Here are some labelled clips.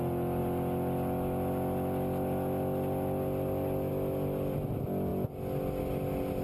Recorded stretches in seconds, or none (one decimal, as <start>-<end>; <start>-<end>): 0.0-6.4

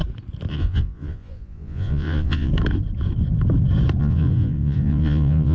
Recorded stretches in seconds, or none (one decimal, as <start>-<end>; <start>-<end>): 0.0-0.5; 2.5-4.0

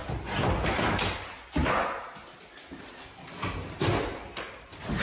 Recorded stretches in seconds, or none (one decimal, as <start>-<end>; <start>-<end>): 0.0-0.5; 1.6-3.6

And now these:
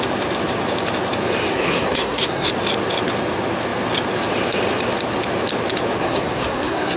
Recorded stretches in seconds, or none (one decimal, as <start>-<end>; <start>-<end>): 0.0-1.5; 2.5-6.0

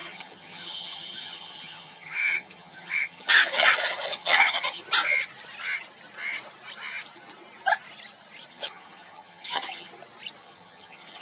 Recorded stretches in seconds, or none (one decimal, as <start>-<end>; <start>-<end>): 4.8-8.5; 9.9-10.4